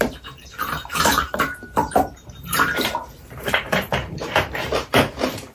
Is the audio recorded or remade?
remade